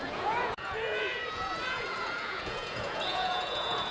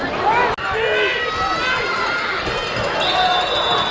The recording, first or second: second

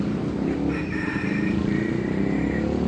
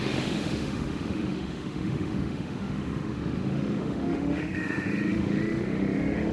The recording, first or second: first